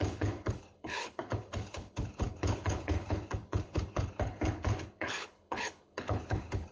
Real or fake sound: fake